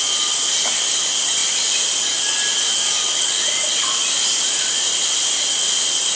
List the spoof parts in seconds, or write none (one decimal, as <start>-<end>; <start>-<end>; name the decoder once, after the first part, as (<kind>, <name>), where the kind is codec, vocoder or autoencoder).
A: none